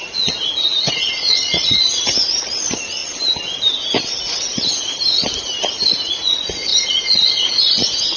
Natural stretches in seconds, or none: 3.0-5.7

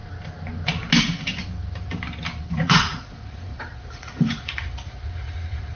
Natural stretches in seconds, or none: 0.0-1.0; 1.4-2.5

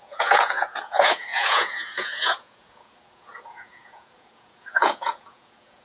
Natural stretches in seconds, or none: none

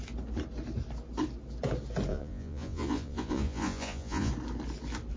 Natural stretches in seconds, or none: 0.0-2.1; 4.3-5.2

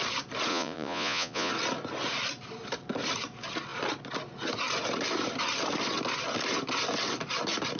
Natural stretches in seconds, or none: 0.0-0.5; 1.5-7.8

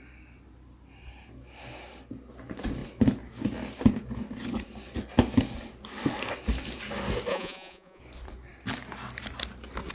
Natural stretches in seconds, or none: 0.0-7.3; 8.0-9.9